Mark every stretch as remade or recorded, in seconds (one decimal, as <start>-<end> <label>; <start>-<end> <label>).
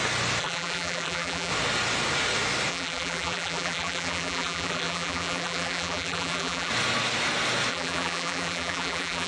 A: 0.0-0.4 recorded; 0.4-1.5 remade; 1.5-2.7 recorded; 2.7-6.7 remade; 6.7-7.7 recorded; 7.7-9.3 remade